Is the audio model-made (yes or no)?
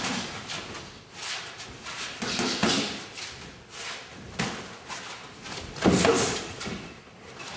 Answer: no